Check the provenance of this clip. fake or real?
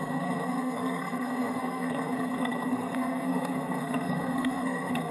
fake